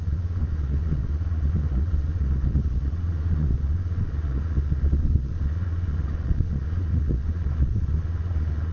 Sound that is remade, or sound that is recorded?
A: remade